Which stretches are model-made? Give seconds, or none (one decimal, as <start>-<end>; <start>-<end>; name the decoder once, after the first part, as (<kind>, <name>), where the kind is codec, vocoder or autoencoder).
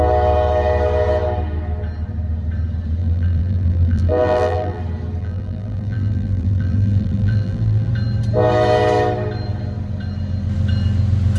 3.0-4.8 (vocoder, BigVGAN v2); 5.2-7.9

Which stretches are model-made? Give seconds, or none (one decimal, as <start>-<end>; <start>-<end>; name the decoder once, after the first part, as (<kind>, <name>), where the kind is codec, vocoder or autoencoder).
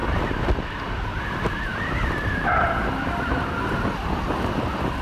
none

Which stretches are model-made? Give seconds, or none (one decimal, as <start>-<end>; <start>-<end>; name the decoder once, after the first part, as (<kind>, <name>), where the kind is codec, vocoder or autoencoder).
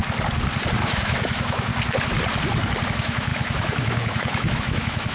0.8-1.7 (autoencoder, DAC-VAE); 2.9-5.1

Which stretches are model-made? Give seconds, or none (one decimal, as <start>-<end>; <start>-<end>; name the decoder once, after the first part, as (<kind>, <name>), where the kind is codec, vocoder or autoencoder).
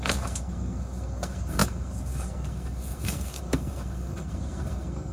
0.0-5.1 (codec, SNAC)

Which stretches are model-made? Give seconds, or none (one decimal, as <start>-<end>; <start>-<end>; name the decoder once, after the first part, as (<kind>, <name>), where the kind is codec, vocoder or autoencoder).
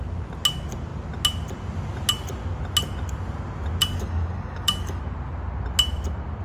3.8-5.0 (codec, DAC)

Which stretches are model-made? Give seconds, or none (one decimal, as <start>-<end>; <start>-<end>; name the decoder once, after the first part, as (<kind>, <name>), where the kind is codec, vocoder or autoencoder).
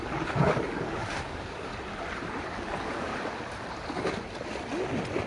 0.0-1.7 (codec, DAC); 2.5-3.1